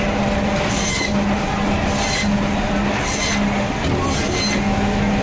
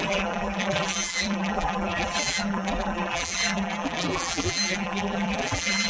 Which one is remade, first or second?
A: second